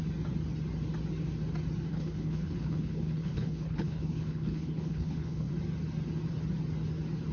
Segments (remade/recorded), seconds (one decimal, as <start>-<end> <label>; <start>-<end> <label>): 0.0-1.9 recorded; 1.9-5.5 remade; 5.5-7.3 recorded